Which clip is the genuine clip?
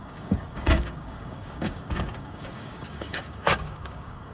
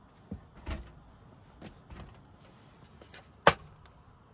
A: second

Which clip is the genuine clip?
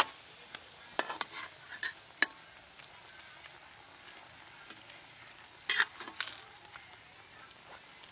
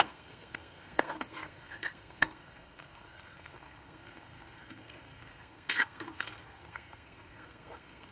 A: first